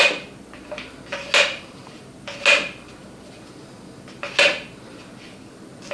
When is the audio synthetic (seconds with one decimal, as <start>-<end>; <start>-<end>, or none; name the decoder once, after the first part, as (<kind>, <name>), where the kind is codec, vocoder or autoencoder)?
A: none